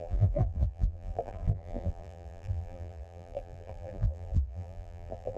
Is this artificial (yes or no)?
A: yes